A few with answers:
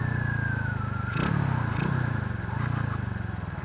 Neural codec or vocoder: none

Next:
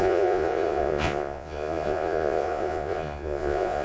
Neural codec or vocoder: vocoder, Vocos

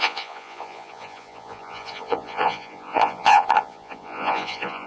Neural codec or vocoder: vocoder, Vocos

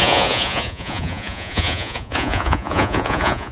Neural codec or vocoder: vocoder, Vocos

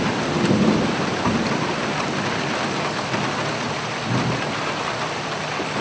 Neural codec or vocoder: none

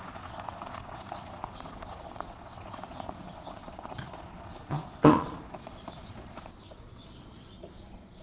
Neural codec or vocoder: vocoder, Vocos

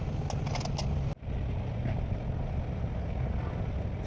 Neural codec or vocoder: none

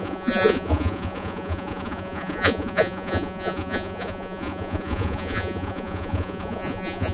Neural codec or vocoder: vocoder, Vocos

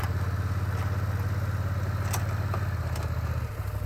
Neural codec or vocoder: none